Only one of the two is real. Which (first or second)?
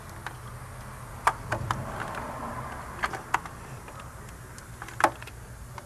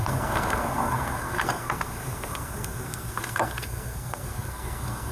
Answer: first